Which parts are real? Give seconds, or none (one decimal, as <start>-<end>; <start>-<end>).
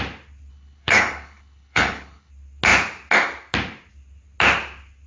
0.0-0.5; 2.3-5.1